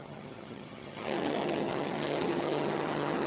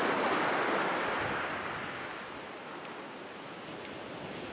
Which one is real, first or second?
second